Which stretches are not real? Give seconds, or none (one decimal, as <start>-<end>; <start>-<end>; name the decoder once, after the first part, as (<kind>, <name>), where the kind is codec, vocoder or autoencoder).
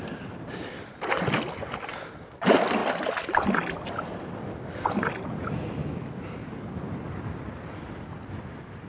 none